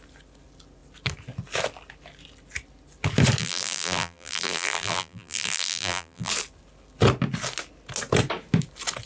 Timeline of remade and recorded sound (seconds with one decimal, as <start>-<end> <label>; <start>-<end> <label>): 0.0-3.4 recorded; 3.4-6.3 remade; 6.3-9.1 recorded